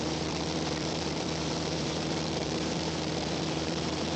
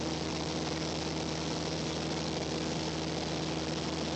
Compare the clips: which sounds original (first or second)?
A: second